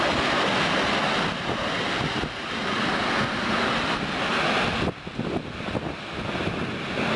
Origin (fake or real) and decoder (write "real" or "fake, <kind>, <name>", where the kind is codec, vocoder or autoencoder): real